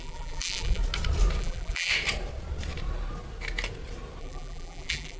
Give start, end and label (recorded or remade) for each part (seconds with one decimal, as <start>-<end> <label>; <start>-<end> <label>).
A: 0.0-0.8 remade; 0.8-1.4 recorded; 1.4-1.9 remade; 1.9-4.2 recorded; 4.2-5.2 remade